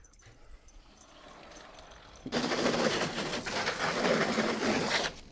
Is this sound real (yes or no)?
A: no